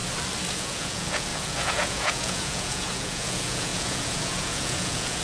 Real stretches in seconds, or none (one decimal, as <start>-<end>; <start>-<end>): 0.0-0.5